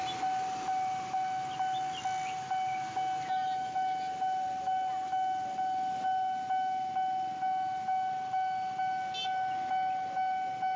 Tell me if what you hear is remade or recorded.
recorded